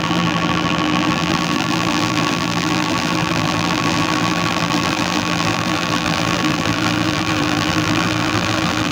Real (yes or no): no